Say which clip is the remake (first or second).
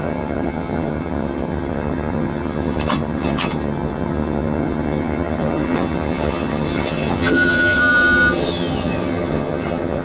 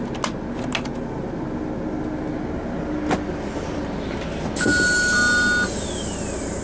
first